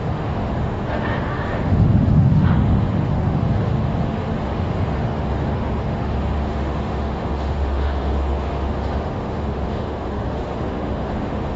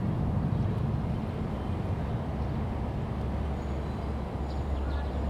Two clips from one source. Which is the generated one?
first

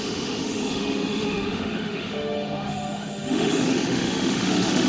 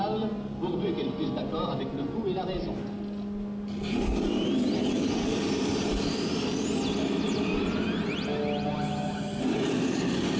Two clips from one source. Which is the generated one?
first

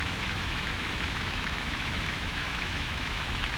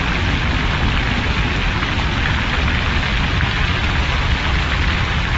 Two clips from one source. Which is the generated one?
first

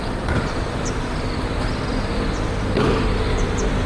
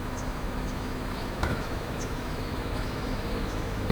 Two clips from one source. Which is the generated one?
second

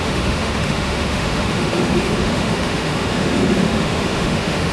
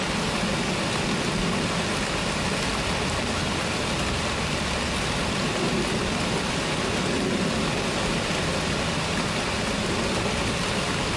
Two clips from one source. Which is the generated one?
first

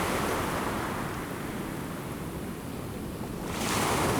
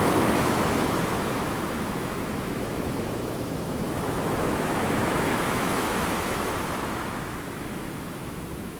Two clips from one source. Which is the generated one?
second